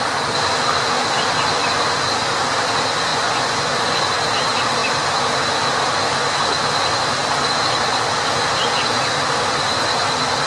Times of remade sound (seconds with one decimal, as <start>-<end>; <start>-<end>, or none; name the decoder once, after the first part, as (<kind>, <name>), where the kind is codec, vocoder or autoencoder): 3.1-4.0 (vocoder, Vocos)